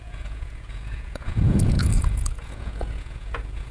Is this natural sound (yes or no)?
no